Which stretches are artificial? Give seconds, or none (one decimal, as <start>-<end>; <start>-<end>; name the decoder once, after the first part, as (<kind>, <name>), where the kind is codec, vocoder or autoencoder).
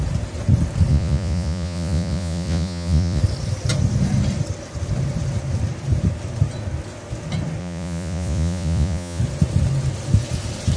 0.9-3.2 (vocoder, Vocos); 7.6-9.2